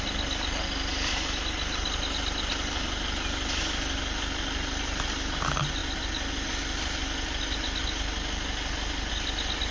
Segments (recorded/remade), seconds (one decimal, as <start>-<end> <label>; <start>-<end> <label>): 0.0-9.7 recorded

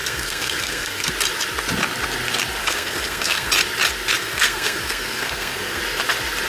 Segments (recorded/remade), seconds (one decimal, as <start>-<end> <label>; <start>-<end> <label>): 0.0-1.1 remade; 1.1-2.6 recorded; 2.6-3.5 remade; 3.5-4.2 recorded; 4.2-5.8 remade; 5.8-6.5 recorded

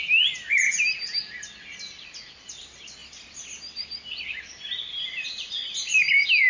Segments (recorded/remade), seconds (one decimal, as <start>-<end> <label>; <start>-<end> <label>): 0.0-6.5 recorded

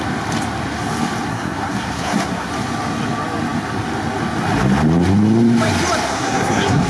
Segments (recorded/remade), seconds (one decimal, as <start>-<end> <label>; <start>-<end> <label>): 0.0-1.3 recorded; 1.3-2.5 remade; 2.5-6.1 recorded; 6.1-6.9 remade

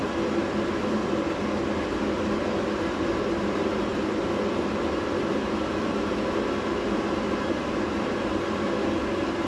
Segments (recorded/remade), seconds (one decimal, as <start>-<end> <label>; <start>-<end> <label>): 0.0-9.5 recorded